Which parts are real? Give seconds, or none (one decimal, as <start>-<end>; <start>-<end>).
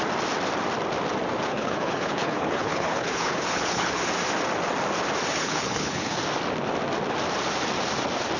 0.0-1.5; 4.0-5.3; 6.2-8.4